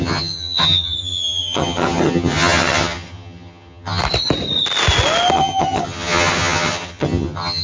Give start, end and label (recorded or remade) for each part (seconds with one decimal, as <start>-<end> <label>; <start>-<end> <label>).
0.0-4.0 remade; 4.0-5.3 recorded; 5.3-7.6 remade